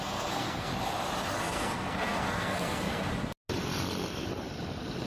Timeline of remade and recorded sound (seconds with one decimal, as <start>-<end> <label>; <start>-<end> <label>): 0.0-0.7 remade; 0.7-1.4 recorded; 1.4-3.1 remade; 3.1-5.1 recorded